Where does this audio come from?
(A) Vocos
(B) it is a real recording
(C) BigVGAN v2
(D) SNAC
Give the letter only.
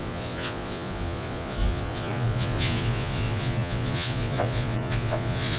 A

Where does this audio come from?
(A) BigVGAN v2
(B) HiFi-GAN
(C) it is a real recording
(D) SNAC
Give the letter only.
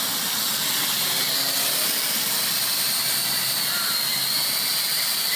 C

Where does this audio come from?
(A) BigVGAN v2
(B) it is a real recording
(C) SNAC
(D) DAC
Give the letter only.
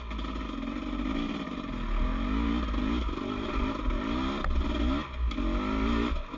B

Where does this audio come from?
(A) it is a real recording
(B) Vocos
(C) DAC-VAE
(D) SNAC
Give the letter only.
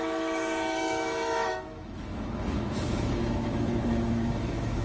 C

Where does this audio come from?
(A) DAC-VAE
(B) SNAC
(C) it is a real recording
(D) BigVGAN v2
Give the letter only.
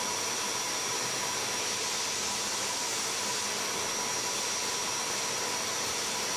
C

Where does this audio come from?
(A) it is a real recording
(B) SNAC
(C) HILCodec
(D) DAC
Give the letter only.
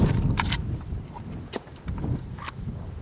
A